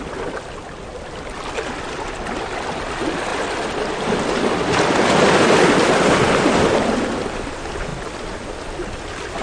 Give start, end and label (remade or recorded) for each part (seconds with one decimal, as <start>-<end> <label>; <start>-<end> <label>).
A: 0.0-9.4 recorded